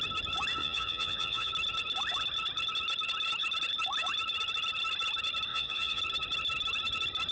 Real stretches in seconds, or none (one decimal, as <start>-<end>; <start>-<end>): 0.0-0.6; 1.5-5.5; 6.0-7.3